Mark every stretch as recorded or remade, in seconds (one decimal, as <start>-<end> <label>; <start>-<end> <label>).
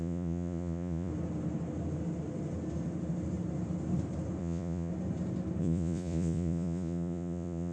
0.0-1.1 remade; 1.1-4.4 recorded; 4.4-4.9 remade; 4.9-5.6 recorded; 5.6-7.7 remade